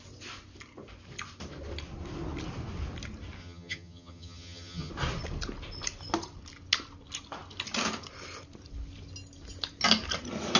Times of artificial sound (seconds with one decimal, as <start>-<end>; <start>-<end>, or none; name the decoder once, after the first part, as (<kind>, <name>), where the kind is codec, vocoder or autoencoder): 3.4-4.9 (vocoder, HiFi-GAN)

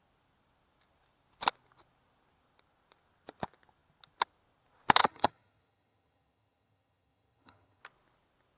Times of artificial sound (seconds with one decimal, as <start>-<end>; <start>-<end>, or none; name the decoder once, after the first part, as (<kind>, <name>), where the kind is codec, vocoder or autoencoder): 5.0-7.8 (vocoder, HiFi-GAN)

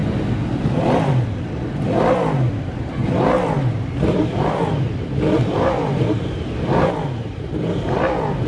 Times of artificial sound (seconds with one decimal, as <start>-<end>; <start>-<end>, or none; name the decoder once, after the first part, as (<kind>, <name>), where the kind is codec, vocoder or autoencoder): 0.6-3.0 (vocoder, BigVGAN v2); 3.6-8.5

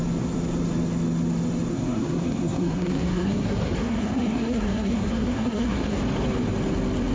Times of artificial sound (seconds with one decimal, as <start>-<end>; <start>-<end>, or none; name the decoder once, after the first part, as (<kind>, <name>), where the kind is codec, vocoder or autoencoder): 1.7-6.0 (codec, SNAC)

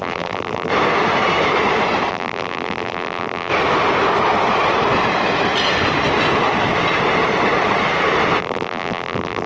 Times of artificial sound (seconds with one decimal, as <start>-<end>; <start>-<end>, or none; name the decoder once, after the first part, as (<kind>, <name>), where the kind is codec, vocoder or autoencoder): 0.0-0.7 (vocoder, BigVGAN v2); 2.1-3.5; 8.4-9.5

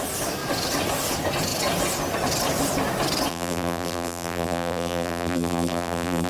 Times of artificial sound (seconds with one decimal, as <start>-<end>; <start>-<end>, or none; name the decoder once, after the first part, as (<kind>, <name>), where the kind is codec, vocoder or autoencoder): 3.3-6.3 (vocoder, BigVGAN v2)

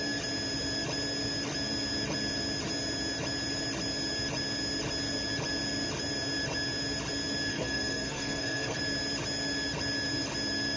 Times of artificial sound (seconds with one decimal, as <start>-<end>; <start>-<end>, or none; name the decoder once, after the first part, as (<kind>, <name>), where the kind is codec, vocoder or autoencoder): 7.5-8.8 (codec, SNAC)

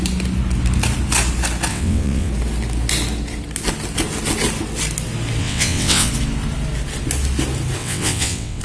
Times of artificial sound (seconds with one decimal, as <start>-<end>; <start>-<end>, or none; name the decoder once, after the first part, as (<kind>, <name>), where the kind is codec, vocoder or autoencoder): 1.7-2.3 (vocoder, WaveNeXt); 5.4-6.1; 7.8-8.6